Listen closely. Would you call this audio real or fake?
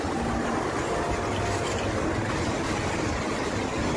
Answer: real